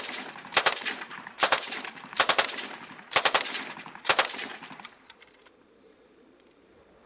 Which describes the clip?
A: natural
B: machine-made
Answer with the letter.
B